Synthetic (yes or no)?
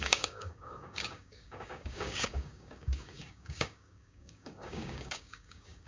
yes